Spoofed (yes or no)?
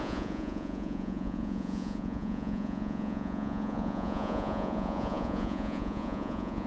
yes